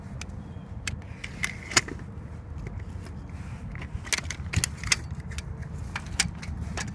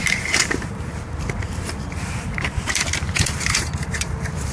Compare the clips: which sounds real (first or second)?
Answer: first